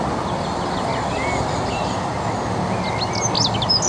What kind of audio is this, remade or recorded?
recorded